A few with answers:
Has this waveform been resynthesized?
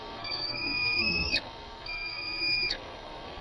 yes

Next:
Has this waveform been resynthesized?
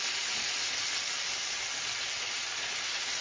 no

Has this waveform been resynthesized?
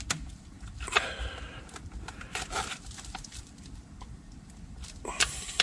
yes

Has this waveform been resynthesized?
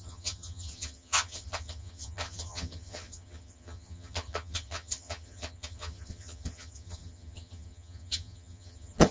yes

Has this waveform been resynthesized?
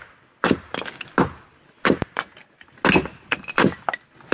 no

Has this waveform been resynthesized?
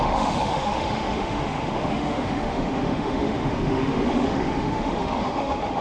yes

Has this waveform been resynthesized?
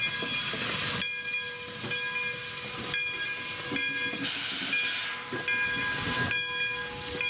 no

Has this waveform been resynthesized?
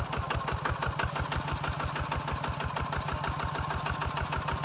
no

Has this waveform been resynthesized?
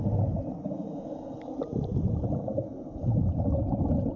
no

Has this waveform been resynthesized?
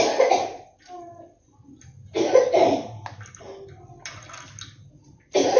no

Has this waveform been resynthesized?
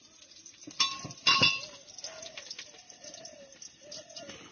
no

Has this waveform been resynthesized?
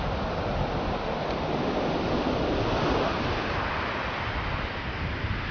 no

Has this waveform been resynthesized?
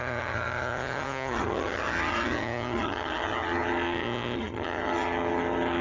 yes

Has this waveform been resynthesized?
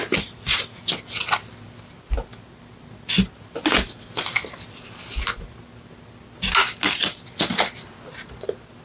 no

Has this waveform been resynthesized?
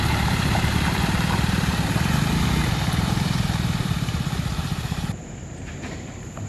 yes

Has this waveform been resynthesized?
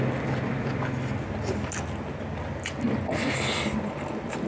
no